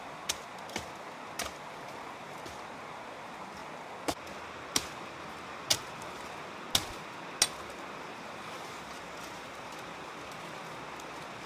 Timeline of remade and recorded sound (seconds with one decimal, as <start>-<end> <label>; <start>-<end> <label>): 0.0-11.5 recorded